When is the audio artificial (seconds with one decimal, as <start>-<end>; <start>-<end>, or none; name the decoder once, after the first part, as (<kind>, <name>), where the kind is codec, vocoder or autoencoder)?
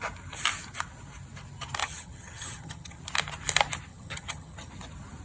1.8-3.0 (vocoder, HiFi-GAN); 3.9-4.7